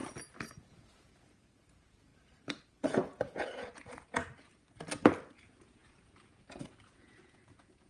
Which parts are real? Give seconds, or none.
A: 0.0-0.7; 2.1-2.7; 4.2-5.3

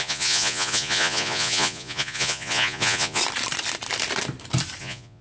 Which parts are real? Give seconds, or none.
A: 3.2-4.8

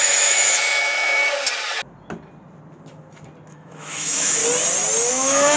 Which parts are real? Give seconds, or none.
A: 1.2-3.5; 4.4-5.1